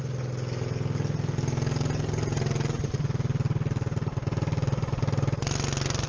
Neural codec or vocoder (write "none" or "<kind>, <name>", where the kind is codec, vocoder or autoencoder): none